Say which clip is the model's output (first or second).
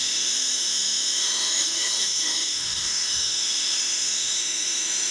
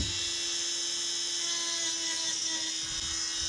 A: first